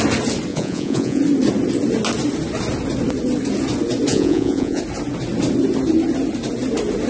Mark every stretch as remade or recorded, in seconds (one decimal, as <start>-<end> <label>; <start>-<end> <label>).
0.0-0.5 recorded; 0.5-1.2 remade; 1.2-4.1 recorded; 4.1-4.8 remade; 4.8-7.1 recorded